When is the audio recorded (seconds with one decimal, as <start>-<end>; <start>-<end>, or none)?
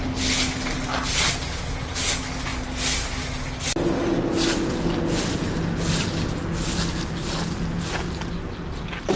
0.0-9.2